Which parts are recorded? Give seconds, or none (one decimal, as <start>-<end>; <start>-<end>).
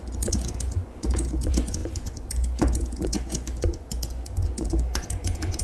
none